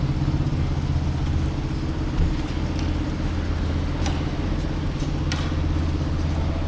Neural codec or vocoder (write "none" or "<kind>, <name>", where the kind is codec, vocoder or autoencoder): none